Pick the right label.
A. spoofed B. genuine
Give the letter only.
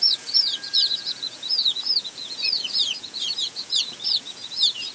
A